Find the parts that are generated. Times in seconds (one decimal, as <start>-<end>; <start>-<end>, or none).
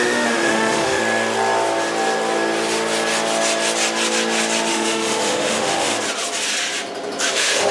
0.0-1.0; 4.7-5.9; 7.3-7.7